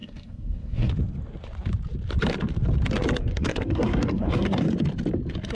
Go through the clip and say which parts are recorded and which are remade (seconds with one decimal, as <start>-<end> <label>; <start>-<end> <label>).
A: 0.0-0.9 remade; 0.9-3.3 recorded; 3.3-4.7 remade; 4.7-5.5 recorded